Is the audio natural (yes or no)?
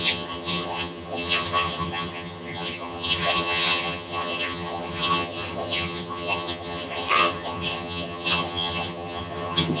no